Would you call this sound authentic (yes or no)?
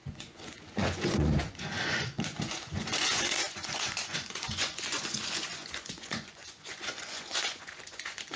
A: no